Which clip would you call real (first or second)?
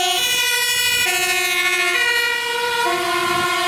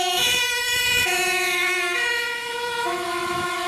first